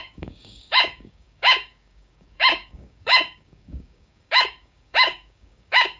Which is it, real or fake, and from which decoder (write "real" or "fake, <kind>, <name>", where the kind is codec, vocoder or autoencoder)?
fake, codec, DAC